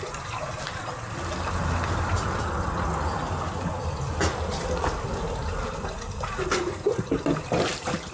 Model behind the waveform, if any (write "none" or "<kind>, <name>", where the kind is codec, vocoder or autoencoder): none